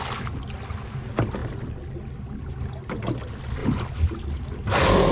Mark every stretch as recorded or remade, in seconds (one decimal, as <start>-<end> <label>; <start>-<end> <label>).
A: 0.0-3.6 recorded; 3.6-4.5 remade; 4.5-5.1 recorded